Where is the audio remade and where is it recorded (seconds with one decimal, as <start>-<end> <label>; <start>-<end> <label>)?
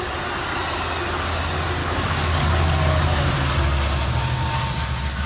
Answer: 0.0-1.8 recorded; 1.8-3.2 remade; 3.2-5.3 recorded